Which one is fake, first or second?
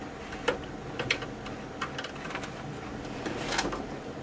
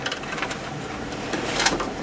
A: second